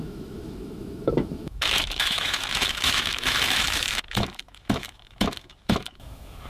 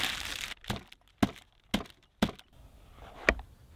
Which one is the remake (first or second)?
first